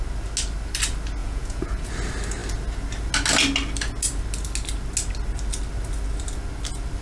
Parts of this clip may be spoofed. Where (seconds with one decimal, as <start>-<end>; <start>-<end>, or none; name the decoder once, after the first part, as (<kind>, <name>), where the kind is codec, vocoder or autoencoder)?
1.2-1.9 (vocoder, Vocos)